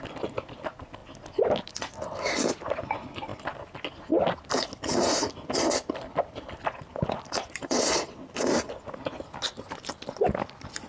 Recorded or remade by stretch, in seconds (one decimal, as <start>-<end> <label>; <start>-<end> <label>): 0.0-10.9 recorded